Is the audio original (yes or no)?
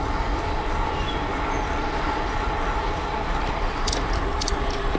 no